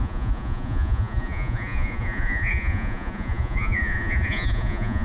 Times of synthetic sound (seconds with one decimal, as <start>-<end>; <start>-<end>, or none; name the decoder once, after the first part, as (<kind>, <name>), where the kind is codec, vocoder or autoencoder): 0.0-5.0 (vocoder, Vocos)